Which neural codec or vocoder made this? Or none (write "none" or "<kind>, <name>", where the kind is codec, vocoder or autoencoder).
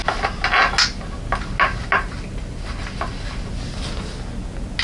none